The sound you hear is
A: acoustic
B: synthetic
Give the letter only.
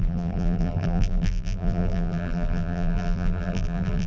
B